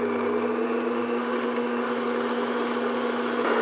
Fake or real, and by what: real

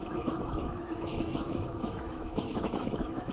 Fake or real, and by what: fake, autoencoder, DAC-VAE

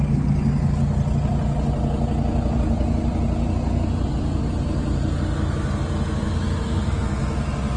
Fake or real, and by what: real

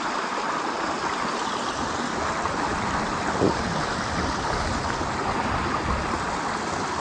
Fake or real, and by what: real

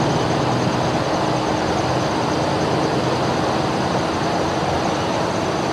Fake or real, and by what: real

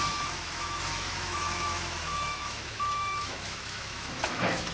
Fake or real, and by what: fake, autoencoder, DAC-VAE